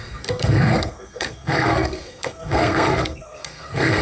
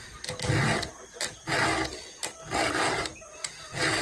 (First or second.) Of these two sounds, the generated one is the first